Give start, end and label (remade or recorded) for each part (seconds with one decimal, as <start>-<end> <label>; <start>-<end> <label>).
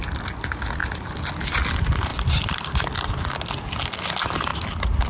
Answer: 0.0-5.1 recorded